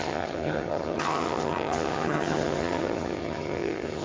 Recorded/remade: remade